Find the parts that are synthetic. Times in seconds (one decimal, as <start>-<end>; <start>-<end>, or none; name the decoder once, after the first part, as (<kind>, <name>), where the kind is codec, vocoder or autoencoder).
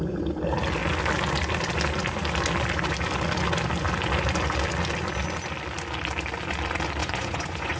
7.0-7.8 (vocoder, Vocos)